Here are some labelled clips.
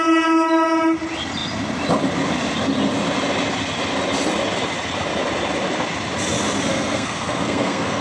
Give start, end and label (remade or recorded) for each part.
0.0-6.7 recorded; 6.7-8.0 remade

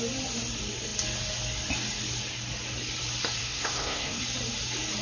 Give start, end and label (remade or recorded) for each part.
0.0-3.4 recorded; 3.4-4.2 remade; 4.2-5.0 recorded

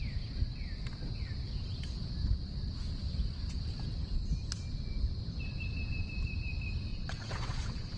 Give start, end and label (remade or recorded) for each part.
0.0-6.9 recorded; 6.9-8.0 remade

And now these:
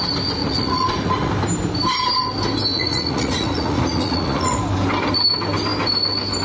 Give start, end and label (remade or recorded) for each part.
0.0-0.4 recorded; 0.4-1.3 remade; 1.3-2.7 recorded; 2.7-4.6 remade; 4.6-6.4 recorded

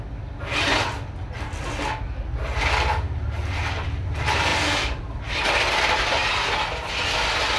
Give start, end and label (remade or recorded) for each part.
0.0-7.6 recorded